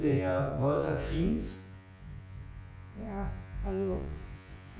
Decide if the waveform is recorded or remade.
remade